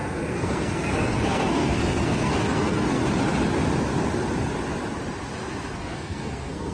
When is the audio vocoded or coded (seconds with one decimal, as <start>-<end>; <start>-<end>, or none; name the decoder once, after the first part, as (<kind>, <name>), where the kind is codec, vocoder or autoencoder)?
0.0-3.0 (codec, SNAC); 5.7-6.7